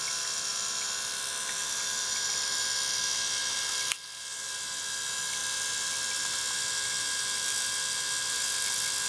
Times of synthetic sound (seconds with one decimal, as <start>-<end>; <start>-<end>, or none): none